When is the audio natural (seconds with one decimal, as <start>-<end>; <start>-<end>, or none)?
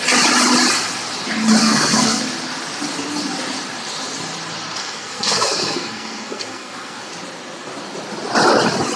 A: 0.0-1.6; 2.2-4.8; 7.1-9.0